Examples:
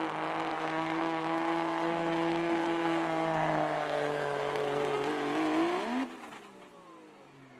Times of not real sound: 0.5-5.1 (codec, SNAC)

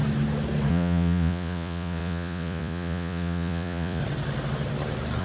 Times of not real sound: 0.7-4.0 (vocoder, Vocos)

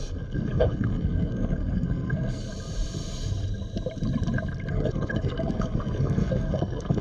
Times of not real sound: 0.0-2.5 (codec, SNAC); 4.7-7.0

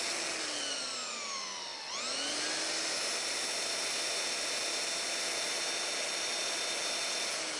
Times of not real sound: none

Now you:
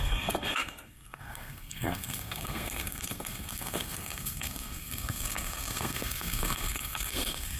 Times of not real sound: 0.0-7.6 (codec, SNAC)

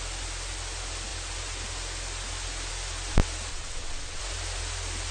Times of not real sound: 3.5-4.2 (vocoder, WaveNeXt)